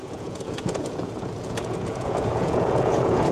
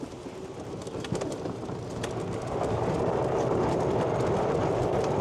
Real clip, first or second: second